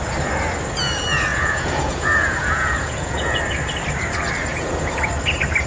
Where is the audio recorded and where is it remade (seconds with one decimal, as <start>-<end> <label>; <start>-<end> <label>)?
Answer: 0.0-1.3 recorded; 1.3-3.4 remade; 3.4-4.5 recorded; 4.5-5.1 remade; 5.1-5.7 recorded